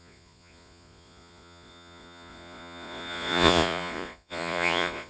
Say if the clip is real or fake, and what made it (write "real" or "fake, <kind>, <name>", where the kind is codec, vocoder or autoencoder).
fake, vocoder, Vocos